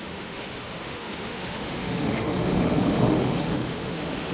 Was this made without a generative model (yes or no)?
no